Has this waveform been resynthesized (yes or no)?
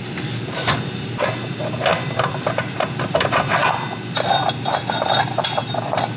no